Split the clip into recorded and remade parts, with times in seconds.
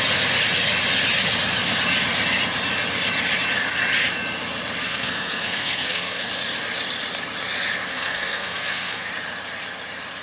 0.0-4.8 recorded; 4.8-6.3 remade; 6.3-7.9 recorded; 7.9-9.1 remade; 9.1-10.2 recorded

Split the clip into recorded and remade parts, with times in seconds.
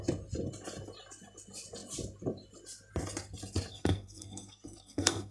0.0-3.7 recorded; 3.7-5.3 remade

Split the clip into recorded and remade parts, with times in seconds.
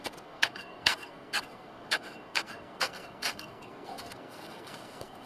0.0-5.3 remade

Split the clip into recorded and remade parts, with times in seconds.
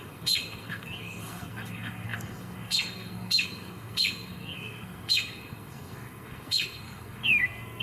0.0-7.8 remade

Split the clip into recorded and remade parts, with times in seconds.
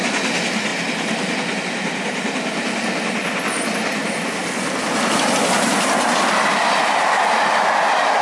0.0-8.2 recorded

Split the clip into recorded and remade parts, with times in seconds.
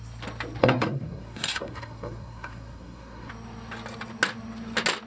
0.0-0.6 recorded; 0.6-3.3 remade; 3.3-5.1 recorded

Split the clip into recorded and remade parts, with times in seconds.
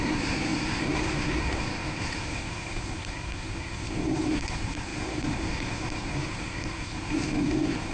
0.0-7.9 remade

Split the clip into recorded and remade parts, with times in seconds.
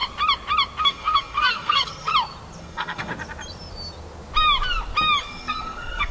0.0-0.8 recorded; 0.8-2.1 remade; 2.1-2.6 recorded; 2.6-3.1 remade; 3.1-5.2 recorded; 5.2-6.1 remade